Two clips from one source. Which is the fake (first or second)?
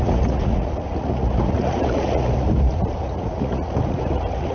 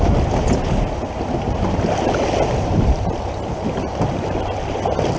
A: first